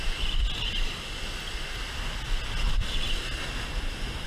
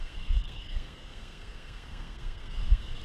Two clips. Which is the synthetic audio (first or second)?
second